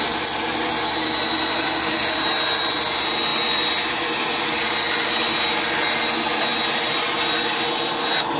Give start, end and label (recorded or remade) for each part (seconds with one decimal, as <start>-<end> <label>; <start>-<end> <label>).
0.0-8.4 recorded